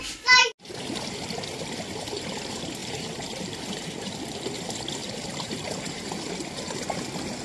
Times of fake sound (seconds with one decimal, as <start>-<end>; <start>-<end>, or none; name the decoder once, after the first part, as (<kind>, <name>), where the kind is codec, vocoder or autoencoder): 2.8-4.1 (vocoder, BigVGAN v2); 5.0-6.3